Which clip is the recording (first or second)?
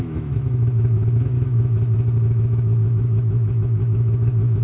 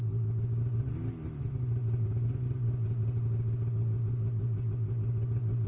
second